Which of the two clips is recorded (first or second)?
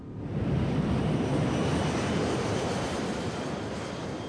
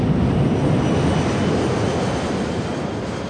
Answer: second